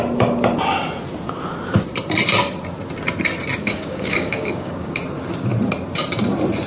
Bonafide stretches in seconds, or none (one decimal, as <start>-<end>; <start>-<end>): 0.0-3.6; 5.0-6.7